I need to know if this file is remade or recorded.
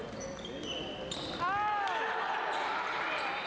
recorded